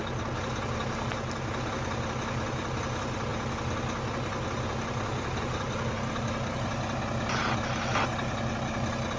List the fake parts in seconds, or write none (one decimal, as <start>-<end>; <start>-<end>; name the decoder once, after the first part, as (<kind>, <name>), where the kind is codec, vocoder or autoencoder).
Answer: none